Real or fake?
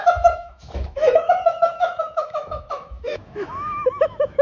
fake